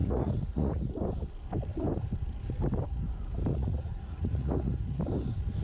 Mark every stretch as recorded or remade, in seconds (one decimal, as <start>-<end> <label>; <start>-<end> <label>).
0.0-0.9 remade; 0.9-3.5 recorded; 3.5-5.0 remade; 5.0-5.6 recorded